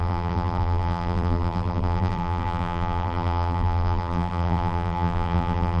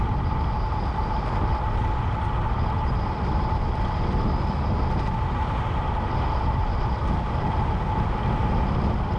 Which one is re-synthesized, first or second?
first